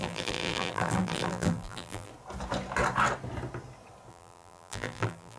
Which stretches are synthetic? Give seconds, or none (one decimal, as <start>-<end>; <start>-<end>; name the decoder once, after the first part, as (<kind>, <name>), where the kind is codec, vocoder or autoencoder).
0.0-2.1 (vocoder, BigVGAN v2); 4.1-5.4